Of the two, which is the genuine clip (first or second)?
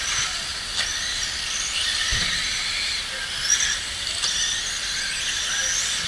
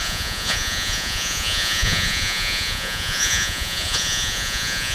first